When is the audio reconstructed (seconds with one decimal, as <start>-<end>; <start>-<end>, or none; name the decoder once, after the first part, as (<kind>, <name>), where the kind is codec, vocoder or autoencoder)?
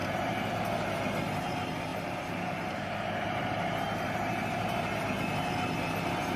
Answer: 0.0-0.5 (vocoder, BigVGAN v2); 1.9-5.2